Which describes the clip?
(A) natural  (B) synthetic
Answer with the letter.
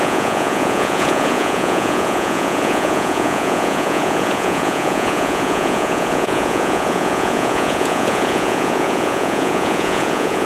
B